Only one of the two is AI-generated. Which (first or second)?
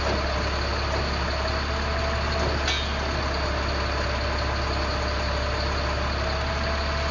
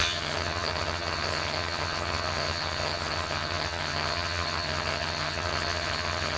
second